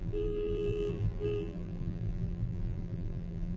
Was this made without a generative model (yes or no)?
no